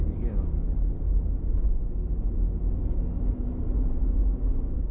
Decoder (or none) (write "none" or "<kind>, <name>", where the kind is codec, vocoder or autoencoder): none